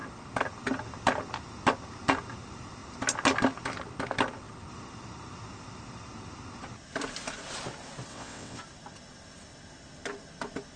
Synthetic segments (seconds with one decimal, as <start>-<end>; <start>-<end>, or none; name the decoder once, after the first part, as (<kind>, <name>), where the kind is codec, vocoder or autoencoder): 8.1-8.6 (vocoder, WaveNeXt)